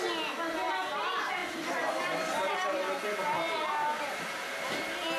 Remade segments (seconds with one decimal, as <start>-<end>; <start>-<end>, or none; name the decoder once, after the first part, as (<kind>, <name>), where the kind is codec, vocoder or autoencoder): 3.8-4.8 (vocoder, BigVGAN v2)